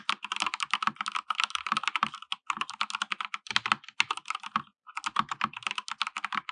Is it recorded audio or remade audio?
recorded